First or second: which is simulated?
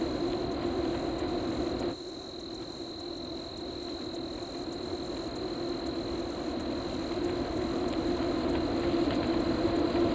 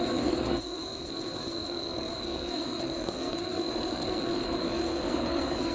second